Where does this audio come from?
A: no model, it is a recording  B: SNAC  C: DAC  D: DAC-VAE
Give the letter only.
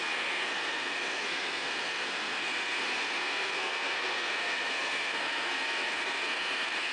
B